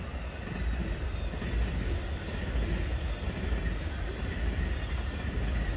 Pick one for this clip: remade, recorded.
recorded